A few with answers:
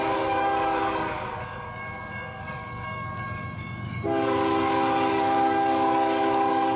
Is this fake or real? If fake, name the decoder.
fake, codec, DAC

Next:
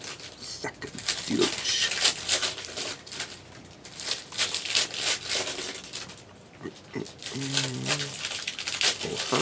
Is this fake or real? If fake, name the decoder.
fake, vocoder, BigVGAN v2